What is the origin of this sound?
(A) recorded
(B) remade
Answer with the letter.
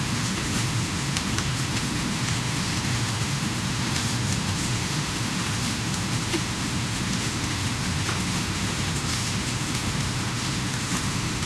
B